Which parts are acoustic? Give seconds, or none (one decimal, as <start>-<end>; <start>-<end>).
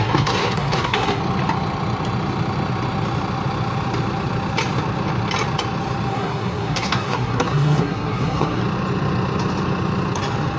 1.2-6.1; 8.6-10.6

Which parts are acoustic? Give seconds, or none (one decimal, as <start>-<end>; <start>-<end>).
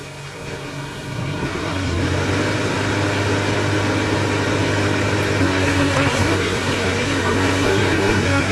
2.0-5.4